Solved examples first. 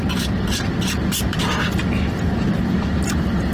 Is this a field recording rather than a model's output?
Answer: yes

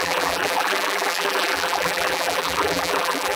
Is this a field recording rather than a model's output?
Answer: no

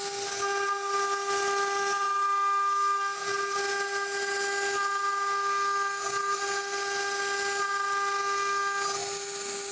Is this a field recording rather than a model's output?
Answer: yes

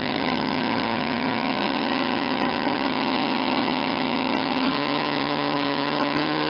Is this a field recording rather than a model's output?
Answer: no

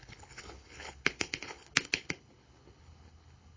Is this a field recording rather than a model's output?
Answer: no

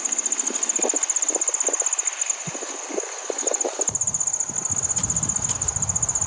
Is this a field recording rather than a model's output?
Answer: yes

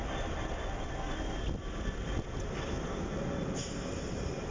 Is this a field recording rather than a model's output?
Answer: yes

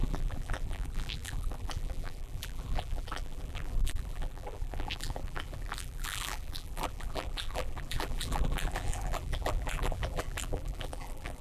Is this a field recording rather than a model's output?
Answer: no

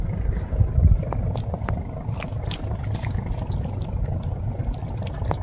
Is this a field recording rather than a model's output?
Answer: yes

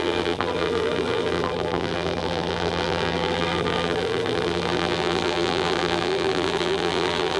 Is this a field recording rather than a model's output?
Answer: no